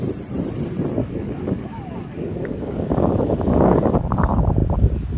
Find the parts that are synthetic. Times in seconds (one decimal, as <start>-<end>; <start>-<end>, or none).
1.0-4.0